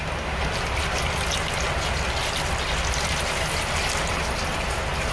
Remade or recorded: recorded